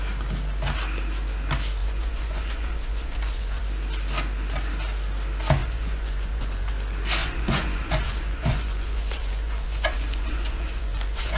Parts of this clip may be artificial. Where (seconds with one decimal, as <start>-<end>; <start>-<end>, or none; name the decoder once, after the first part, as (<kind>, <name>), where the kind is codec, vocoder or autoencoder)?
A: 1.8-3.6 (vocoder, Vocos); 5.6-6.7; 7.2-11.4

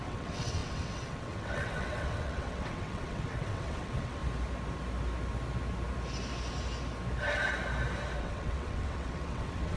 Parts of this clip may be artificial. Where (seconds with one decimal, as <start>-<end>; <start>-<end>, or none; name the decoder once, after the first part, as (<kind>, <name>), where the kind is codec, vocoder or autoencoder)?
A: 0.0-4.2 (vocoder, WaveNeXt); 8.2-9.8